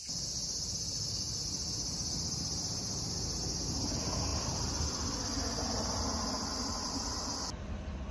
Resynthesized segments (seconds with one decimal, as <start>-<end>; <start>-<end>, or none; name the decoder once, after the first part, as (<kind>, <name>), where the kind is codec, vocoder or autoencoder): none